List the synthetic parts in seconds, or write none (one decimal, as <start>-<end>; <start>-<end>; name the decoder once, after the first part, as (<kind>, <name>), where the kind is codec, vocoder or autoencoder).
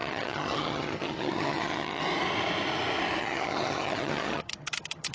0.0-2.0 (vocoder, HiFi-GAN); 3.2-5.1